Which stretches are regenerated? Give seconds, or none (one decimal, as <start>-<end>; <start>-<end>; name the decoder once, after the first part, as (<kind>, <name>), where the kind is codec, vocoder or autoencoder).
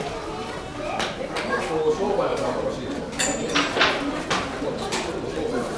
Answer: 2.3-3.0 (vocoder, BigVGAN v2); 3.4-5.1